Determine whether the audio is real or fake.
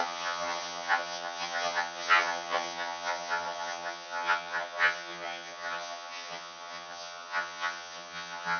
fake